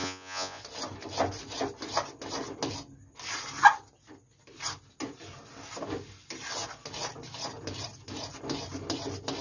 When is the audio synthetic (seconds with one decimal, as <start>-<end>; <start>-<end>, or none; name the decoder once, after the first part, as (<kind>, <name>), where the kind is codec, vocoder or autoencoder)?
0.0-0.6 (vocoder, Vocos)

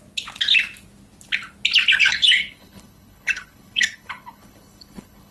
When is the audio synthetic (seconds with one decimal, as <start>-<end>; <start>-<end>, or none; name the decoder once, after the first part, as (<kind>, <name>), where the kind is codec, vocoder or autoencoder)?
2.0-5.3 (codec, HILCodec)

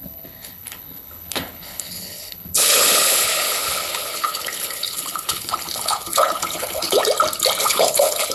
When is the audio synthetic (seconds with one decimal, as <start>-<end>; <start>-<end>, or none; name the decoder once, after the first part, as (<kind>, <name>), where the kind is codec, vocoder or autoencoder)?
0.0-7.0 (codec, HILCodec); 7.6-8.3

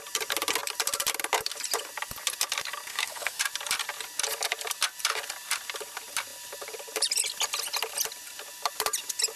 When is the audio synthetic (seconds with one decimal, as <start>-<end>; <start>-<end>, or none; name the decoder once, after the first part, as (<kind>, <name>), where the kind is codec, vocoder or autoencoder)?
2.9-3.4 (codec, SNAC)